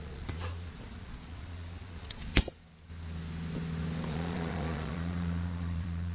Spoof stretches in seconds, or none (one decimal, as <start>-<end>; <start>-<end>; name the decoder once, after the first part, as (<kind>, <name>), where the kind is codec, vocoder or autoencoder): 0.0-2.3 (vocoder, Vocos); 4.1-6.1